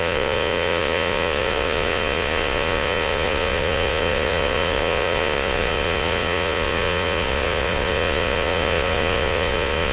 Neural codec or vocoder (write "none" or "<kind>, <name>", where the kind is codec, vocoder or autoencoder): vocoder, Vocos